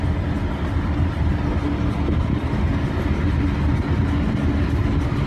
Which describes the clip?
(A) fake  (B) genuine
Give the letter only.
B